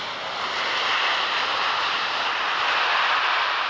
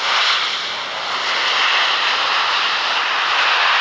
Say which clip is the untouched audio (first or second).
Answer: second